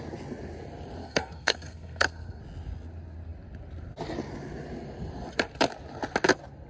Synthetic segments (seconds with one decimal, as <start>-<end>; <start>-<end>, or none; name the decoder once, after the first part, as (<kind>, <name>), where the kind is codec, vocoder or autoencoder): 1.0-2.4 (codec, SNAC)